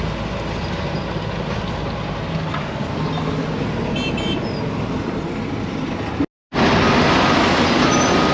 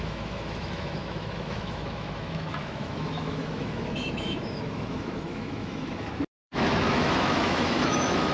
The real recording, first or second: first